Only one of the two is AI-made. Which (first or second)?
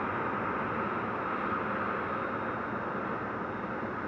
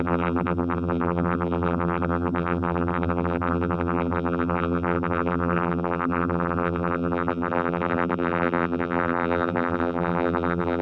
second